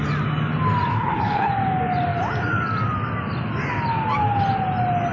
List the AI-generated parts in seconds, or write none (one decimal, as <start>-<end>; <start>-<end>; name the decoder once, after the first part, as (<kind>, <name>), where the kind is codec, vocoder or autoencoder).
0.9-1.5 (codec, HILCodec)